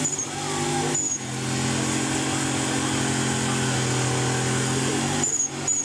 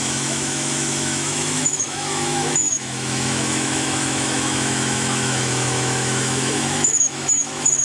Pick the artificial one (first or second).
second